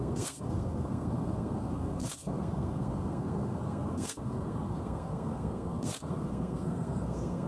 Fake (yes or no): yes